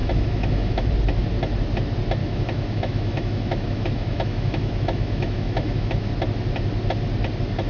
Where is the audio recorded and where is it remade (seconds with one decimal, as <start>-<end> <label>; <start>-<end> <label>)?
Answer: 0.0-0.8 remade; 0.8-2.2 recorded; 2.2-6.1 remade; 6.1-7.7 recorded